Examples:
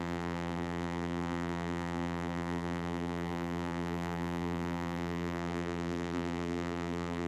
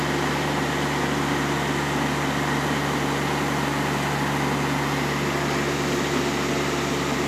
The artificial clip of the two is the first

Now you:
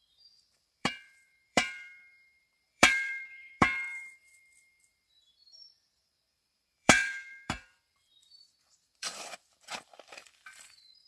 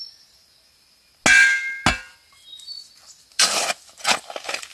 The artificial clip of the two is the first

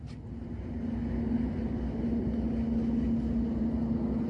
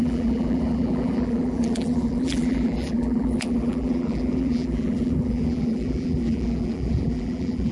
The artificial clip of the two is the second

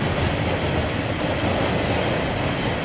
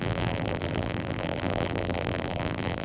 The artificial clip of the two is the second